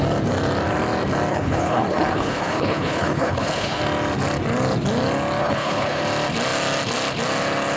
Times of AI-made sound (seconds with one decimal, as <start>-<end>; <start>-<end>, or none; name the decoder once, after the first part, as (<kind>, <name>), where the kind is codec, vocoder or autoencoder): 1.3-3.8 (codec, HILCodec); 5.4-6.0